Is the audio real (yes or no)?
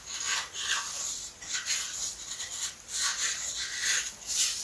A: yes